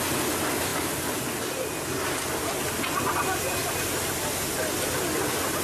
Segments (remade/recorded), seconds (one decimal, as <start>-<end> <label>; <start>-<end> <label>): 0.0-5.6 recorded